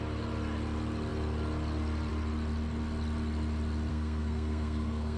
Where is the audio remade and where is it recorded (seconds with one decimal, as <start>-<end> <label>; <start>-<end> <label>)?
0.0-3.9 recorded; 3.9-5.2 remade